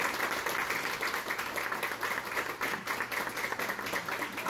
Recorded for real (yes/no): yes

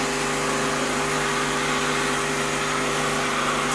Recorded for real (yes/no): yes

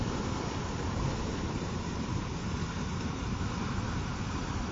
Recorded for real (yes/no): no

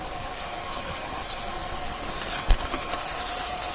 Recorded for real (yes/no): no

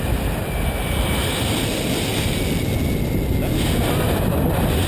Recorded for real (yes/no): yes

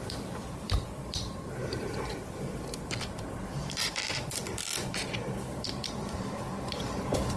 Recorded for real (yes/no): no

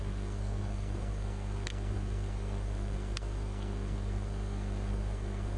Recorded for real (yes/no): no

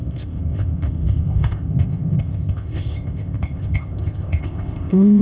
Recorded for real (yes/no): no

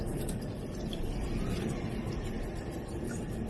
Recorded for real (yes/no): no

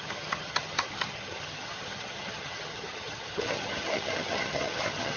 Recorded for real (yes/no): no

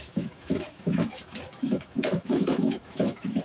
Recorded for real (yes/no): no